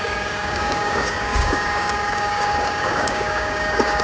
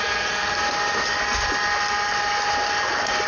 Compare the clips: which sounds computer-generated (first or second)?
first